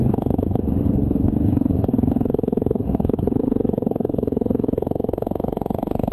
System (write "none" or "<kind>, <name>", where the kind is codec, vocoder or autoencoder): autoencoder, DAC-VAE